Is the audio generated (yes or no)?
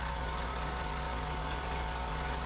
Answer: yes